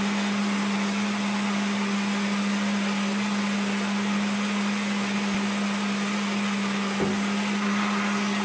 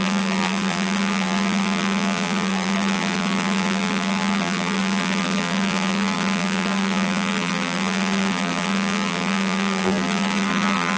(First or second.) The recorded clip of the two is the first